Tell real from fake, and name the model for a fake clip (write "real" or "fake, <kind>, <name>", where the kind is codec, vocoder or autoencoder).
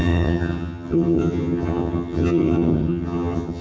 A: fake, vocoder, HiFi-GAN